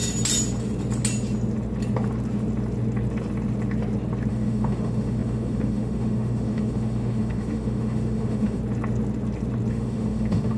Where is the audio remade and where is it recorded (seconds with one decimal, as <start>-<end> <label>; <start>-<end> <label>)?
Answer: 0.0-4.3 recorded; 4.3-8.6 remade; 8.6-9.7 recorded; 9.7-10.6 remade